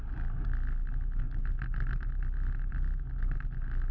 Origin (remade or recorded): recorded